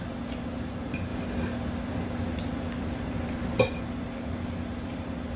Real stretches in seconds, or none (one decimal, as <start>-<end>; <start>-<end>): 0.0-5.4